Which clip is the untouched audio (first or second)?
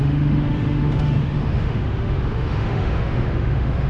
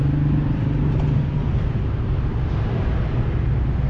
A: second